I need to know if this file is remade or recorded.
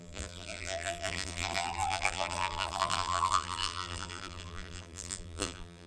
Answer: remade